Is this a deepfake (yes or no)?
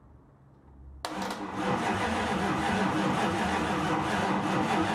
no